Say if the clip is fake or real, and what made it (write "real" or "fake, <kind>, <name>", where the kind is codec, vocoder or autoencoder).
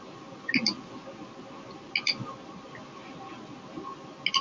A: real